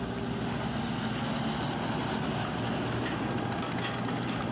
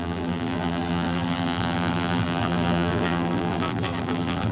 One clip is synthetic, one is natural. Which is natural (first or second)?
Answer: first